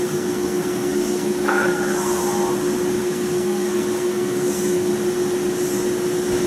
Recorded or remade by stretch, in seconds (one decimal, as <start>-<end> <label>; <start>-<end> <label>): 0.0-2.2 remade; 2.2-3.0 recorded; 3.0-4.9 remade; 4.9-6.5 recorded